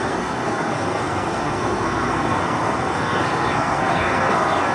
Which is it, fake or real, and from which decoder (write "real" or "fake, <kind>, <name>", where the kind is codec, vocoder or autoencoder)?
fake, codec, SNAC